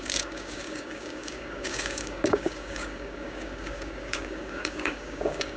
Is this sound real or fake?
fake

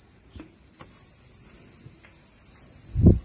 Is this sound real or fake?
real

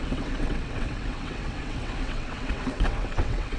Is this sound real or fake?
fake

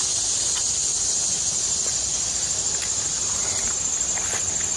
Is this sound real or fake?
real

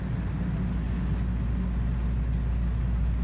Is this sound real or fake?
real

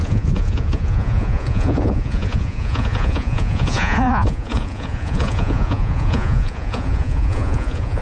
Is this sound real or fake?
fake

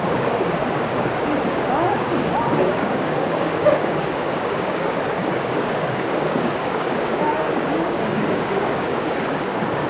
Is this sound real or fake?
fake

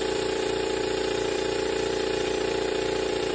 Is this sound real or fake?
fake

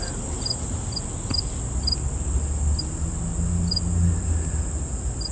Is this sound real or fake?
real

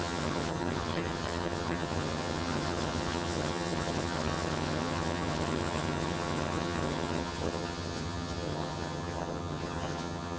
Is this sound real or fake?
fake